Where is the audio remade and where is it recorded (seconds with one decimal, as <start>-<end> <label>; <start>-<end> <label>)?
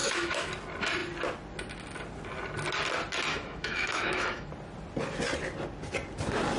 0.0-0.5 remade; 0.5-3.3 recorded; 3.3-4.5 remade; 4.5-6.6 recorded